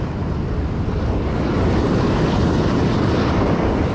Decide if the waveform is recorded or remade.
recorded